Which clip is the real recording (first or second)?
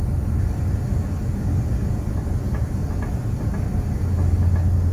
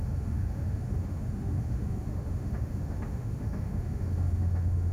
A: first